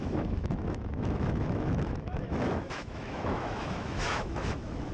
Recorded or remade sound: remade